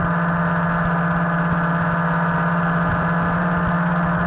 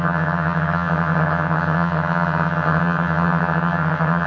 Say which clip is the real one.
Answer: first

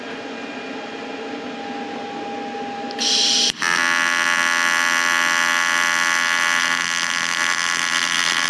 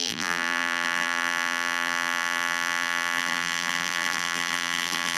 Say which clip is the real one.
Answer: first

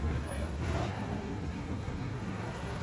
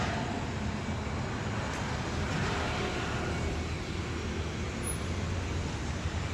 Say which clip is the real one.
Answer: second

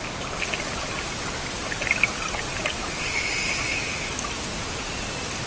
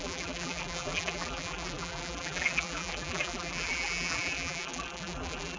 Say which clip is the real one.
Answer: first